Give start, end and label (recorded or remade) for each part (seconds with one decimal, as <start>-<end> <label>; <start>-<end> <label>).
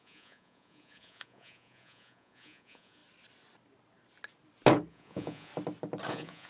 0.0-3.0 remade; 3.0-4.9 recorded; 4.9-5.5 remade; 5.5-6.1 recorded; 6.1-6.5 remade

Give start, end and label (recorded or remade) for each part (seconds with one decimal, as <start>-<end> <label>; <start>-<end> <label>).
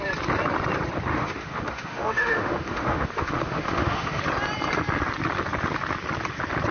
0.0-1.1 recorded; 1.1-4.2 remade; 4.2-6.7 recorded